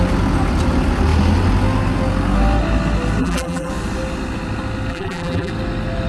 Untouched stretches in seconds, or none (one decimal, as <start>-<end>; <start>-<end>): 0.0-3.2; 3.7-4.9; 5.5-6.1

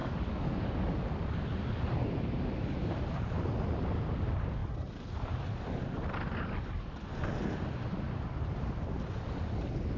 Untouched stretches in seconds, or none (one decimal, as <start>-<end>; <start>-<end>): 1.0-10.0